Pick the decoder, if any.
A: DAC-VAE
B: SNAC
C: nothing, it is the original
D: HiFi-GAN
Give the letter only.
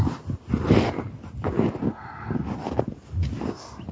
C